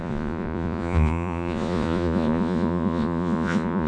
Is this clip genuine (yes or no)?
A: no